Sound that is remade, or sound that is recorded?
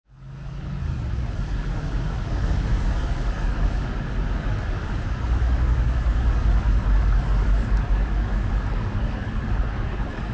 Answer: remade